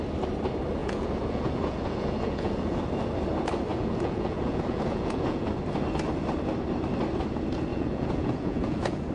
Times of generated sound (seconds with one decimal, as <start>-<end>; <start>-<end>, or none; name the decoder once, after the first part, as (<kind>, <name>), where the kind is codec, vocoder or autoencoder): 0.8-2.8 (vocoder, Vocos); 3.7-5.5; 7.7-9.1